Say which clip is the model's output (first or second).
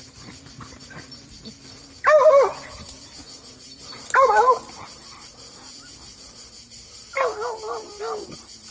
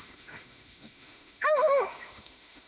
second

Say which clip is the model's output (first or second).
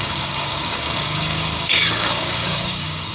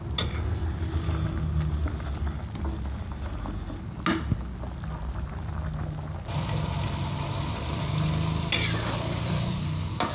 first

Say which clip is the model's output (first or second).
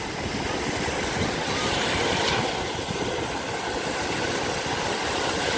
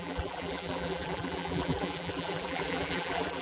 second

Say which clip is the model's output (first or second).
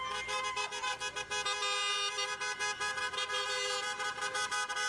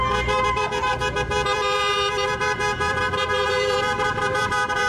second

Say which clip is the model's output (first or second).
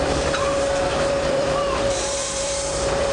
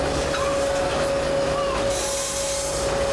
first